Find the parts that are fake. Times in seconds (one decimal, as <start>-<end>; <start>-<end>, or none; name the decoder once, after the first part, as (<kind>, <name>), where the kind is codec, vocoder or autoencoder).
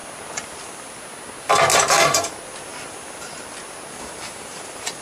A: 1.7-2.3 (vocoder, BigVGAN v2)